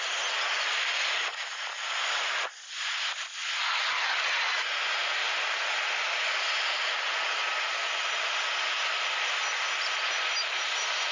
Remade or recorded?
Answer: recorded